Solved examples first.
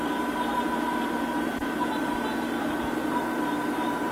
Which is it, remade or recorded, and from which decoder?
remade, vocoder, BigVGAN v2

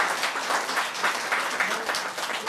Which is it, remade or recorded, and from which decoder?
recorded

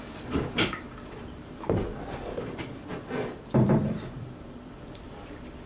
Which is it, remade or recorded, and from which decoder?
remade, vocoder, BigVGAN v2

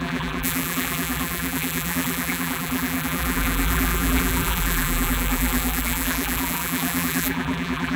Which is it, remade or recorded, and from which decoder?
remade, vocoder, BigVGAN v2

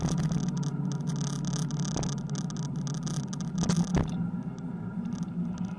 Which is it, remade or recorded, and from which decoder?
recorded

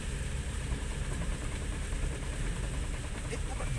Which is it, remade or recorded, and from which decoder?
remade, vocoder, BigVGAN v2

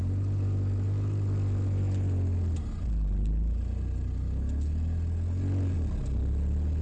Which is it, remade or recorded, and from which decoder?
recorded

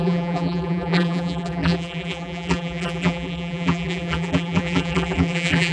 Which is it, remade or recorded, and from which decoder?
remade, vocoder, BigVGAN v2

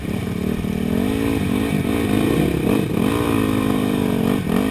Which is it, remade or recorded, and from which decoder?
recorded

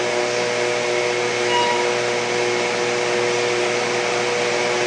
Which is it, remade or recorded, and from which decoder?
recorded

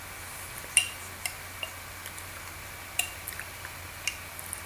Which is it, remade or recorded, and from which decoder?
recorded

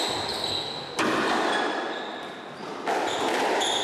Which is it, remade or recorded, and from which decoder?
recorded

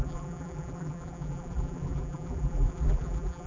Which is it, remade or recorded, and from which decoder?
remade, vocoder, BigVGAN v2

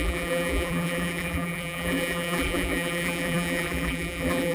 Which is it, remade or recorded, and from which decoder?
remade, vocoder, BigVGAN v2